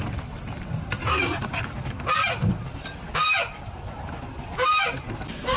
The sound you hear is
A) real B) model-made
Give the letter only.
A